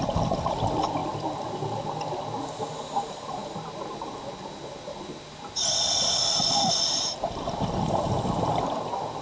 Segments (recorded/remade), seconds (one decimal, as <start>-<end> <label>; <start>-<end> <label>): 0.0-9.2 recorded